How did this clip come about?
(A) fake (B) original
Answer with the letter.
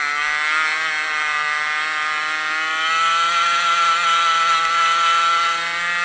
B